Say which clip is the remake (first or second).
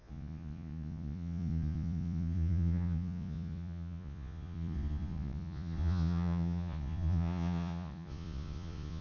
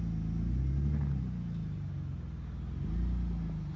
first